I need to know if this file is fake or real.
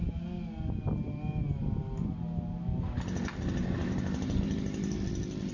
real